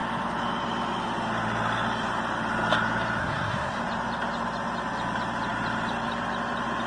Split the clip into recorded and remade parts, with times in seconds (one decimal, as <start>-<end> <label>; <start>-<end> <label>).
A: 0.0-3.2 recorded; 3.2-3.8 remade; 3.8-6.9 recorded